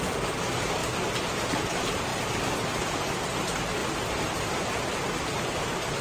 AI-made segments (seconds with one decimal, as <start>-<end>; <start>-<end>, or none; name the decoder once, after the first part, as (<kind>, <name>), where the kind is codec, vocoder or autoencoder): 2.1-2.8 (vocoder, BigVGAN v2); 3.8-4.8